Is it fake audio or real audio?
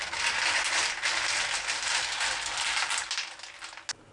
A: real